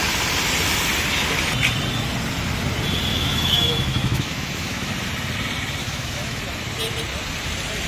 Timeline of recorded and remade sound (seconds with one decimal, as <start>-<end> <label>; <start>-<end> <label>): 0.0-3.1 recorded; 3.1-4.9 remade; 4.9-5.8 recorded; 5.8-6.4 remade; 6.4-7.9 recorded